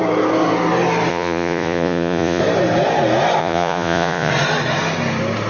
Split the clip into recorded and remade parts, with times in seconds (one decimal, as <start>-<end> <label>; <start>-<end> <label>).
0.0-1.1 recorded; 1.1-2.4 remade; 2.4-3.4 recorded; 3.4-4.3 remade; 4.3-5.5 recorded